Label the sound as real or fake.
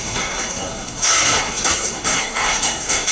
fake